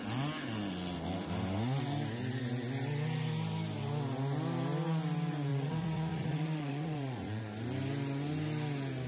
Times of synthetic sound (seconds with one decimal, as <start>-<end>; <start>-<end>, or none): 5.5-7.4